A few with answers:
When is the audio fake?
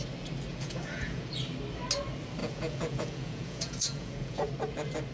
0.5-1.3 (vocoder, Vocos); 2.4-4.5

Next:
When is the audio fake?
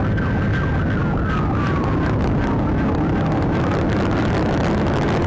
none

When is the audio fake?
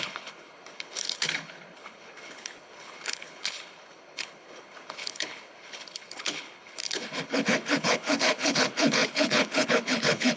0.0-10.4 (codec, HILCodec)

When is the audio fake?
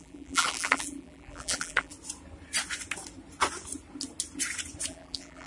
0.0-1.9 (vocoder, BigVGAN v2); 4.9-5.5